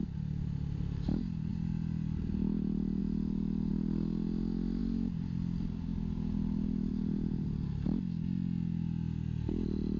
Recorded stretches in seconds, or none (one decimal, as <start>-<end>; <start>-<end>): 0.0-10.0